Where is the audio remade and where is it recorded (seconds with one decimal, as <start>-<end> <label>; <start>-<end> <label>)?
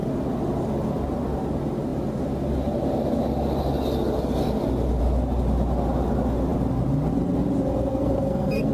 0.0-7.9 recorded; 7.9-8.7 remade